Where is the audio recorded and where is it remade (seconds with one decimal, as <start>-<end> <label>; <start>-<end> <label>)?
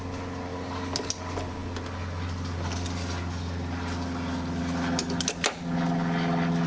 0.0-6.7 recorded